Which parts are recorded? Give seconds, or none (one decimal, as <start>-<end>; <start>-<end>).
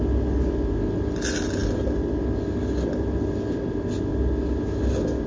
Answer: 0.0-5.3